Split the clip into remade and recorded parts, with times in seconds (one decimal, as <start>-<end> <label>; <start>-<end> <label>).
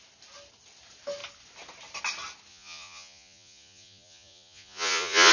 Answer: 0.0-2.5 recorded; 2.5-5.3 remade